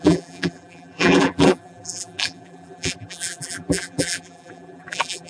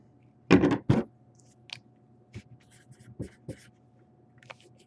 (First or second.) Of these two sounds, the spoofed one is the first